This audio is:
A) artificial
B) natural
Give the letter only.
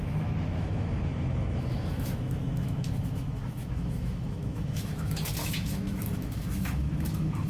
A